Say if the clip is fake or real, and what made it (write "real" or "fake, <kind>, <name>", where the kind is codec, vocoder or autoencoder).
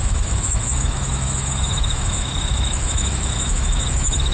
fake, autoencoder, DAC-VAE